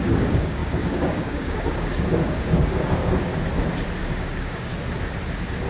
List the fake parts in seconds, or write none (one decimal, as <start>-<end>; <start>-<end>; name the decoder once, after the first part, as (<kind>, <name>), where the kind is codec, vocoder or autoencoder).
0.0-3.3 (codec, DAC); 4.0-4.7